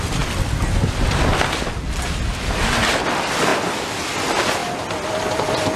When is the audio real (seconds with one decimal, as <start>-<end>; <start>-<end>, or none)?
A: 0.0-5.8